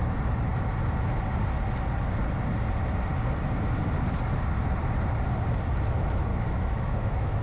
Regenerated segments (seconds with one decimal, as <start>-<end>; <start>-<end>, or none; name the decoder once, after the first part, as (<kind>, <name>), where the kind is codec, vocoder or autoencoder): 6.3-7.4 (autoencoder, DAC-VAE)